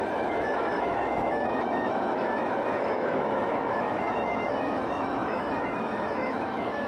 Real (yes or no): no